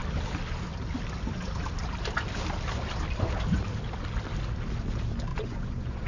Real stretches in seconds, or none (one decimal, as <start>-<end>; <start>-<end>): 0.0-5.3

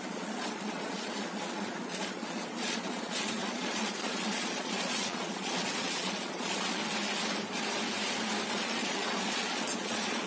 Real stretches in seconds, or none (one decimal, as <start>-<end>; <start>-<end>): 6.8-8.5